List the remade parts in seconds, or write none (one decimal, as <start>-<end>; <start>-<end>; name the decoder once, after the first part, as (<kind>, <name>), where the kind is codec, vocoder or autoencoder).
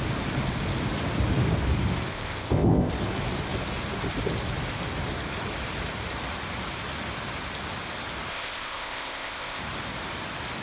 2.1-2.9 (codec, ZipCodec); 8.3-9.6